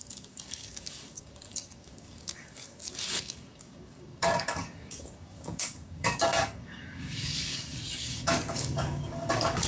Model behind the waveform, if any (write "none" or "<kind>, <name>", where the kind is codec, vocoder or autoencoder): codec, DAC